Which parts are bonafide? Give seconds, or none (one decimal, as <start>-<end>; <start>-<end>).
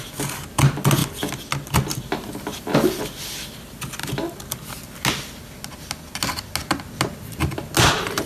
0.0-8.3